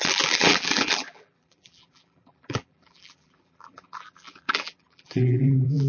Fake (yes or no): yes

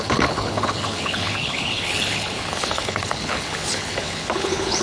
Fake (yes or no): yes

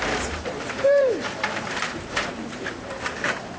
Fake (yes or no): yes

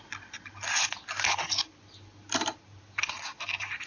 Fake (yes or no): no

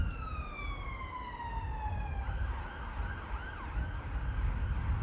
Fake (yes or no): no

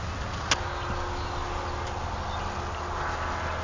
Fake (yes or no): no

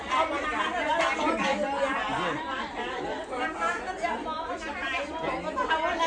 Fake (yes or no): no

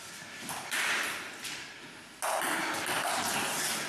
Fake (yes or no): no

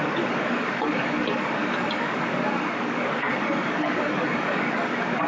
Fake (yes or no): yes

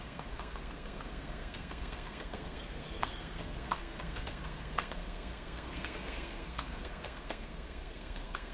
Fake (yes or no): yes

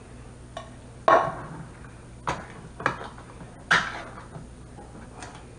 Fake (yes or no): no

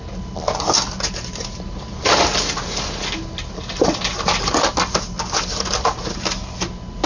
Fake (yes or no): no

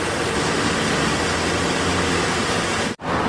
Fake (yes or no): no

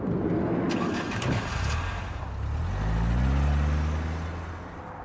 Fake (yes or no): no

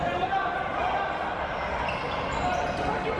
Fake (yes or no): no